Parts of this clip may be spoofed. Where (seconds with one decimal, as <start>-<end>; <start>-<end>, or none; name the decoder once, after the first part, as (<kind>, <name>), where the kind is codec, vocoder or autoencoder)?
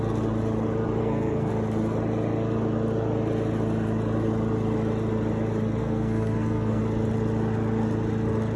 1.0-1.5 (codec, SNAC); 5.8-6.8